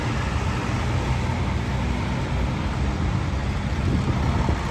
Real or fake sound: real